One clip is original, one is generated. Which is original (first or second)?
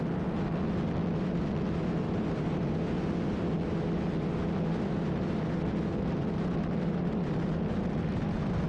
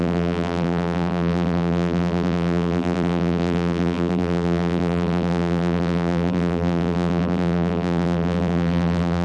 first